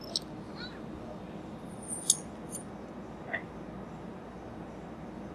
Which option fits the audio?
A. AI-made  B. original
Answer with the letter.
B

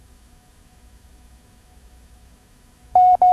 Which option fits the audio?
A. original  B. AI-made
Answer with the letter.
B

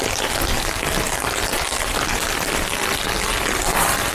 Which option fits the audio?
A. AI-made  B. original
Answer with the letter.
B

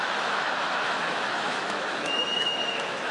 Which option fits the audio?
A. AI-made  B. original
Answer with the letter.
A